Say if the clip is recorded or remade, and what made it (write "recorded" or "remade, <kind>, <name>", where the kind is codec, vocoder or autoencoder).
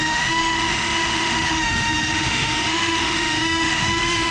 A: remade, autoencoder, DAC-VAE